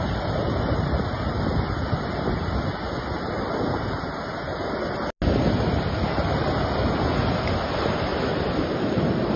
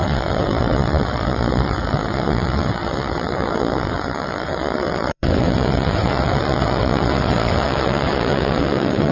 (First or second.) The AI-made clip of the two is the second